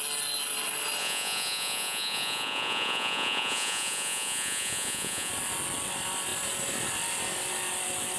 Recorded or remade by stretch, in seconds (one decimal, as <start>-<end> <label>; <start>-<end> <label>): 0.0-1.0 recorded; 1.0-5.3 remade; 5.3-8.2 recorded